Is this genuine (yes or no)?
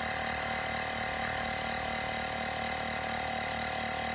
yes